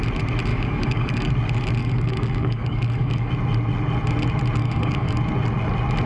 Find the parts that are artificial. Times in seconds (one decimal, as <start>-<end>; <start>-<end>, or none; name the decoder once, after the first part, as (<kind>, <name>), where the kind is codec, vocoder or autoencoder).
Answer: 0.5-1.3 (codec, DAC); 1.8-3.3; 4.6-5.2